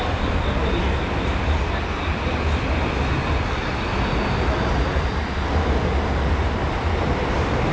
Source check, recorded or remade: recorded